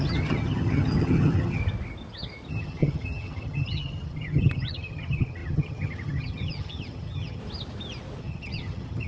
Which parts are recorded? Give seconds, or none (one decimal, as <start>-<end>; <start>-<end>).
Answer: 1.6-2.5; 7.4-8.2